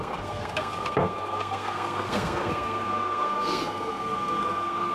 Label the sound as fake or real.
fake